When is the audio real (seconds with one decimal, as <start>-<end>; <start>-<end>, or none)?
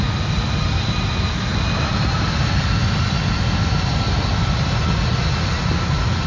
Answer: 0.0-6.3